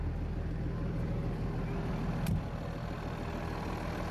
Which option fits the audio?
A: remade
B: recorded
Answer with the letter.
B